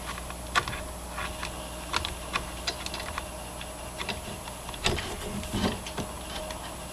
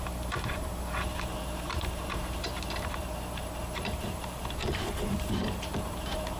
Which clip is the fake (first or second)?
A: second